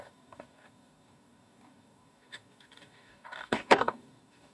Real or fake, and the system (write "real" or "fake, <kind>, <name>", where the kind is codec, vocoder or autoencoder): fake, codec, DAC